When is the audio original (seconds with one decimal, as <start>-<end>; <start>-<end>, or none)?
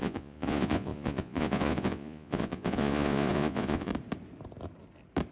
3.9-5.3